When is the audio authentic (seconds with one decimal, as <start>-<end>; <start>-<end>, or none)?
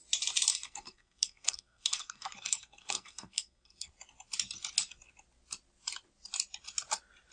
0.0-0.5; 3.9-7.3